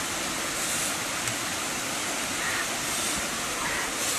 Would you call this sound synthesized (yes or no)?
no